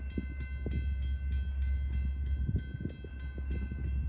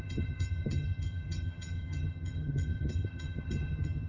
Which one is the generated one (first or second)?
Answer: second